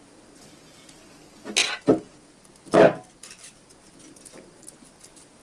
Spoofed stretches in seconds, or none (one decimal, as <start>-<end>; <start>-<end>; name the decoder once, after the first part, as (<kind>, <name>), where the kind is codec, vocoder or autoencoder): none